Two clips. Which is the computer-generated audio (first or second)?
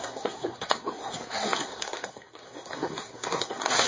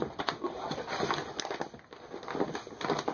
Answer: first